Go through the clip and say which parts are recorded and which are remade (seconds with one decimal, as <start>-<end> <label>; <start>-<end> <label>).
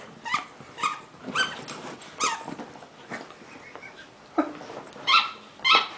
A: 0.0-6.0 recorded